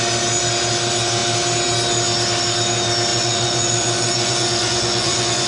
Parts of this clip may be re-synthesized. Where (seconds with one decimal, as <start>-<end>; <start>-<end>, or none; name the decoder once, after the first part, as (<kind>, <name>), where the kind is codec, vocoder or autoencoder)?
3.1-5.5 (vocoder, Vocos)